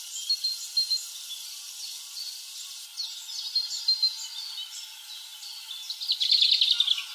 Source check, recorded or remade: recorded